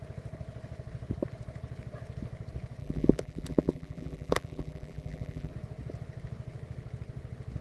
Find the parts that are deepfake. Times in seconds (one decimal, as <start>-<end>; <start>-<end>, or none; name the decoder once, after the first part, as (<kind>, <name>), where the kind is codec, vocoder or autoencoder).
2.8-5.5 (vocoder, BigVGAN v2)